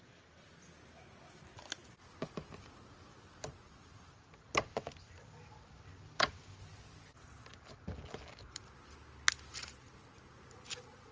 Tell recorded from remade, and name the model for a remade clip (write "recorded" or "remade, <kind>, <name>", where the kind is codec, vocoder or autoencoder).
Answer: recorded